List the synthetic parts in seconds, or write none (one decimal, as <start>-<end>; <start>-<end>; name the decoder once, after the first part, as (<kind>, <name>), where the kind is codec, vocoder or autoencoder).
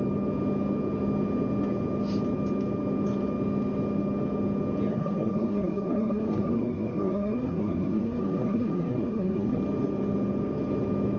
4.9-9.6 (codec, SNAC)